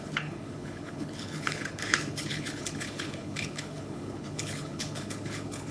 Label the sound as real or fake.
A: fake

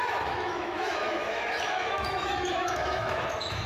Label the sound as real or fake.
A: fake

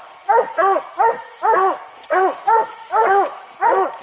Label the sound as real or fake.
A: fake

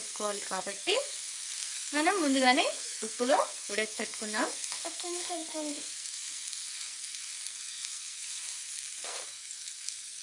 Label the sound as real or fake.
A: fake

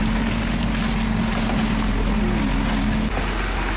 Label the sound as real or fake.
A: real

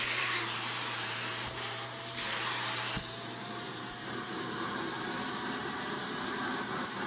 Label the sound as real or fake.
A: fake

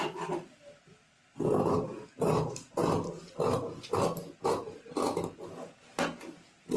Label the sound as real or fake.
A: real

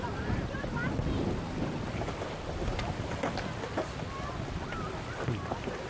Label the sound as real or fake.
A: real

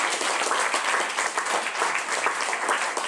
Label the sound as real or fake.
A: real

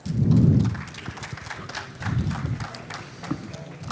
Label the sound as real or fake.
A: real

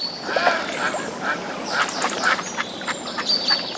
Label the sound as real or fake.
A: real